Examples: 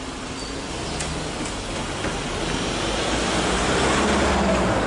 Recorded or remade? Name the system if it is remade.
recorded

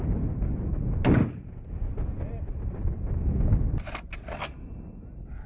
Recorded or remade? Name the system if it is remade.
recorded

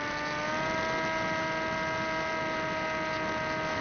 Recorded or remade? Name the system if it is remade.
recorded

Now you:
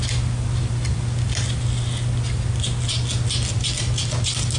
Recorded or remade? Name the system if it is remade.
recorded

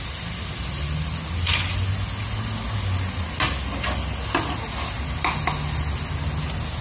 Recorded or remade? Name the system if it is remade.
recorded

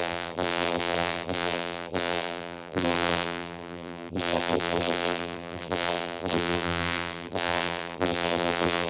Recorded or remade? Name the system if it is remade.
remade, vocoder, BigVGAN v2